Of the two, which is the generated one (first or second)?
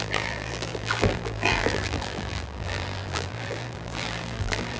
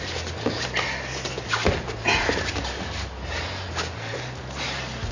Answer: first